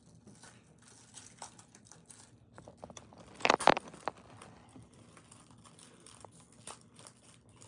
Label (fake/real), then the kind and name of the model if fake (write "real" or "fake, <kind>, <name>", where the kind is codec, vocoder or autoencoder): real